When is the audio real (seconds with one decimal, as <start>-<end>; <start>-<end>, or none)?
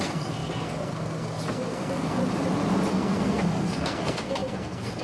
2.2-2.9